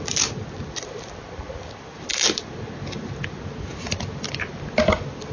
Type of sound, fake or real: real